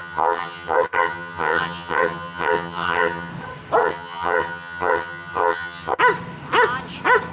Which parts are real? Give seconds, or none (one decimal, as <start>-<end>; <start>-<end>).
3.3-3.8; 6.0-7.3